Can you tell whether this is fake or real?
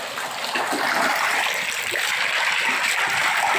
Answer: fake